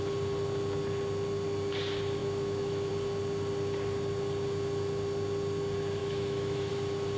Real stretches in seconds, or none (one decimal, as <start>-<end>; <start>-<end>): 0.0-2.2; 2.9-6.0; 6.7-7.2